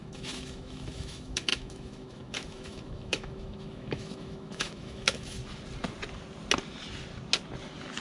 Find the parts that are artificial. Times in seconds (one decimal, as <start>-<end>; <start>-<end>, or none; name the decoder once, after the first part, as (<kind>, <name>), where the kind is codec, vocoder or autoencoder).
0.0-5.4 (autoencoder, DAC-VAE)